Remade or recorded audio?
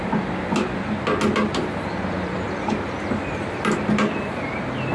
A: recorded